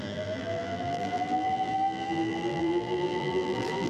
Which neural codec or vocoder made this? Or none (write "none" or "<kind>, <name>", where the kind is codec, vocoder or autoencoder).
vocoder, BigVGAN v2